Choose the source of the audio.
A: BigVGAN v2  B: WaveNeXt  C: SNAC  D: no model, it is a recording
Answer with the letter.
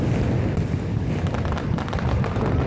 D